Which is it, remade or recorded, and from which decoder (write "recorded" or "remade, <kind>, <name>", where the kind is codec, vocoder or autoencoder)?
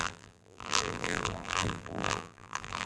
remade, vocoder, BigVGAN v2